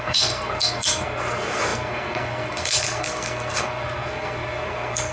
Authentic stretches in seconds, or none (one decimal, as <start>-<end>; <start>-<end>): none